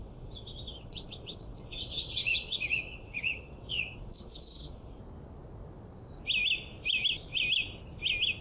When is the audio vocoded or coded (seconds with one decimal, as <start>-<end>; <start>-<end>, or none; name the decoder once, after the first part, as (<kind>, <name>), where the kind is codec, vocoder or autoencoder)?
0.0-5.0 (vocoder, WaveNeXt)